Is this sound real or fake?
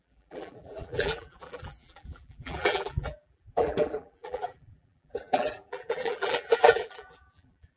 fake